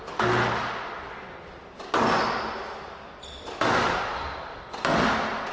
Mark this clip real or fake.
real